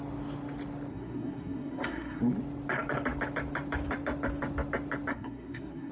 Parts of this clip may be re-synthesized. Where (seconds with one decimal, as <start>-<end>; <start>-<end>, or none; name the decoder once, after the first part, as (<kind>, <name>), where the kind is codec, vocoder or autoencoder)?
0.9-2.2 (codec, SNAC); 5.1-5.9